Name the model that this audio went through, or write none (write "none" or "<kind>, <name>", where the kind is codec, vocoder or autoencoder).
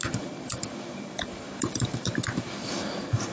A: vocoder, BigVGAN v2